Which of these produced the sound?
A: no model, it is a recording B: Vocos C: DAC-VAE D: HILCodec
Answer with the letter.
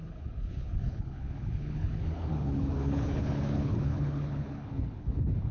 D